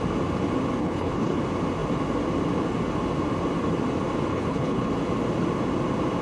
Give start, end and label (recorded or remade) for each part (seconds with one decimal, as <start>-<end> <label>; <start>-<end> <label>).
0.0-0.8 recorded; 0.8-1.4 remade; 1.4-4.3 recorded; 4.3-4.9 remade; 4.9-6.2 recorded